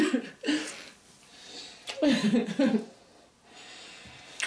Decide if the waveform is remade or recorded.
recorded